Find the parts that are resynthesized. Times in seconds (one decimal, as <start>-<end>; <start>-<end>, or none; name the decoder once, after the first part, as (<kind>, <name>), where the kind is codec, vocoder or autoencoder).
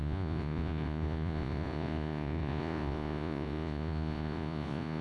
0.0-5.0 (vocoder, Vocos)